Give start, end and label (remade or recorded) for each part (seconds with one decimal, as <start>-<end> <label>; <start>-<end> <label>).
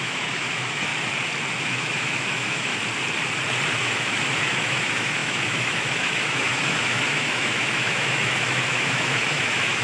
0.0-0.9 remade; 0.9-1.6 recorded; 1.6-2.7 remade; 2.7-3.7 recorded; 3.7-9.8 remade